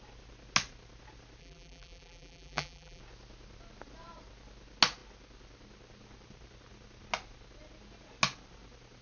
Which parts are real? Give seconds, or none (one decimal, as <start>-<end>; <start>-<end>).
0.0-1.4; 3.0-9.0